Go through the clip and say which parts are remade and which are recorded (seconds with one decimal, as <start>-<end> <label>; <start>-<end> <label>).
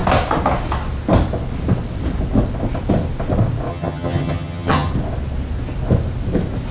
0.0-3.7 recorded; 3.7-4.9 remade; 4.9-6.7 recorded